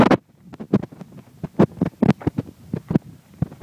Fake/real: real